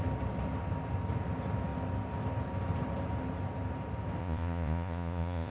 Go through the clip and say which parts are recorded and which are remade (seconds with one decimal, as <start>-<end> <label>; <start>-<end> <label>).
0.0-4.2 recorded; 4.2-5.5 remade